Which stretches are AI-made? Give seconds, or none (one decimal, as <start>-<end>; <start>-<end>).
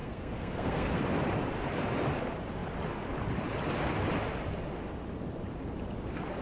0.0-1.0